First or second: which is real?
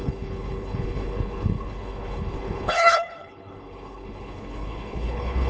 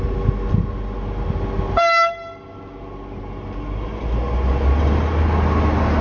second